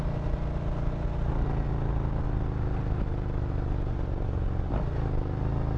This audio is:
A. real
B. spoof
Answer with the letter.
A